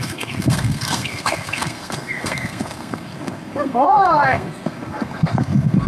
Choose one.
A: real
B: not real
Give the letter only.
B